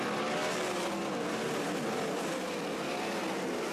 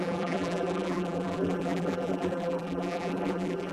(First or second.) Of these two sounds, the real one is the first